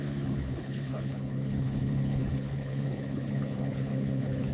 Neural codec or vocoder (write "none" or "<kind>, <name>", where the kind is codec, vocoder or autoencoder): codec, HILCodec